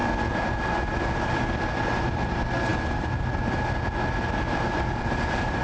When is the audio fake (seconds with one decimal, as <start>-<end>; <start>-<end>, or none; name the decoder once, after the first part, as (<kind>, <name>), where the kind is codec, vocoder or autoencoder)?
none